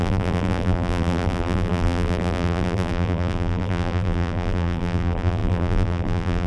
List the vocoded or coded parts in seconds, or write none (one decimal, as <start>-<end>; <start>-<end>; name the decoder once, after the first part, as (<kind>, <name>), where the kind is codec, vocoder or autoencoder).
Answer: 0.0-6.5 (vocoder, BigVGAN v2)